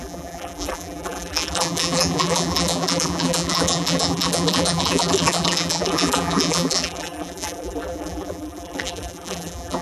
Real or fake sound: fake